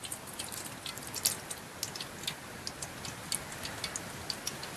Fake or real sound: real